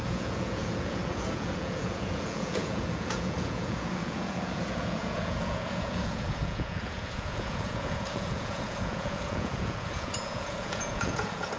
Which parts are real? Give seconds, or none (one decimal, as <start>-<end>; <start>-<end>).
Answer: none